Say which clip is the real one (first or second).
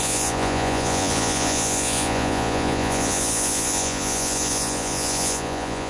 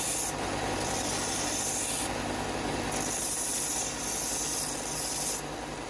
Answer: second